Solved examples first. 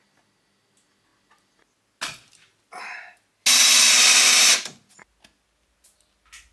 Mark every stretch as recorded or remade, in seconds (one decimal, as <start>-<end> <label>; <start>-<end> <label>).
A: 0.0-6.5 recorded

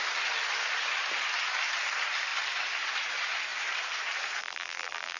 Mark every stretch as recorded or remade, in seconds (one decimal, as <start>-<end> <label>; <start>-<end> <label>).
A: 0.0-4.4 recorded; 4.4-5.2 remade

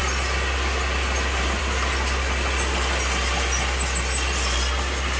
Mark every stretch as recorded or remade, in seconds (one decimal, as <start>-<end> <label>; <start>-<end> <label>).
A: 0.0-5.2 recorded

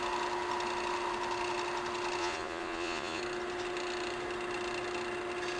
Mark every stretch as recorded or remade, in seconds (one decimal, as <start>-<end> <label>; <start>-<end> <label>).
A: 0.0-2.2 recorded; 2.2-3.2 remade; 3.2-5.6 recorded

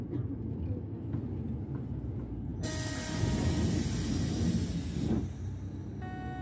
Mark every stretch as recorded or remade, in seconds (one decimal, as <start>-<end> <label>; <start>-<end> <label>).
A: 0.0-6.4 recorded

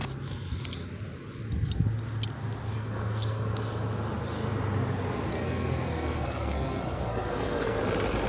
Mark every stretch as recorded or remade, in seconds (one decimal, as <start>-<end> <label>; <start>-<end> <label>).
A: 0.0-2.7 recorded; 2.7-3.5 remade; 3.5-5.3 recorded; 5.3-7.8 remade; 7.8-8.3 recorded

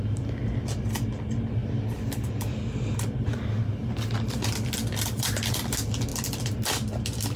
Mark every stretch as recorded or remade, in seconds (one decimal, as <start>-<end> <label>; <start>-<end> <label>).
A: 0.0-7.4 recorded